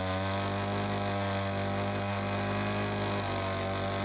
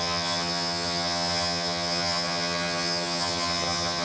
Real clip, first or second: first